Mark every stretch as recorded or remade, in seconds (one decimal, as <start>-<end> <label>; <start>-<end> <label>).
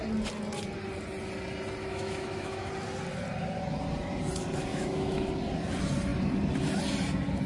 0.0-1.8 recorded; 1.8-2.7 remade; 2.7-4.7 recorded; 4.7-5.3 remade; 5.3-7.5 recorded